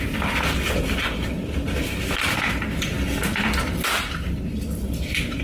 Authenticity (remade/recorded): remade